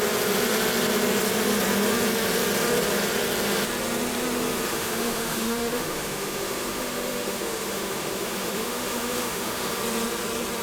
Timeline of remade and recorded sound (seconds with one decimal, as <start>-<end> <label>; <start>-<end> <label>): 0.0-4.7 recorded; 4.7-9.8 remade; 9.8-10.6 recorded